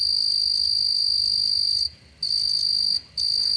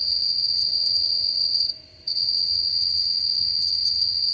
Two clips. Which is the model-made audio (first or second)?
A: second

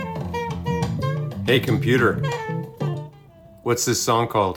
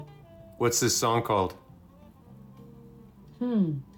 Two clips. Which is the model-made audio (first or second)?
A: first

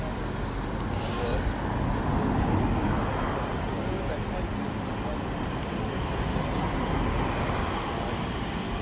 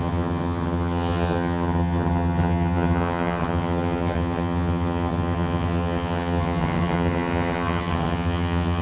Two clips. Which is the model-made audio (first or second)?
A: second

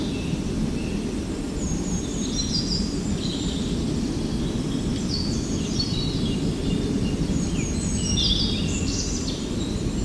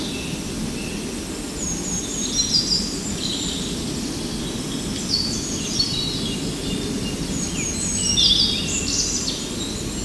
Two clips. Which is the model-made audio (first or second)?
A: first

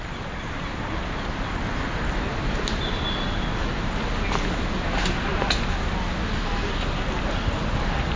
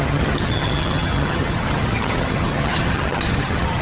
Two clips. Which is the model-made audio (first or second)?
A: second